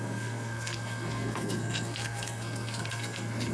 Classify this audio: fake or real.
fake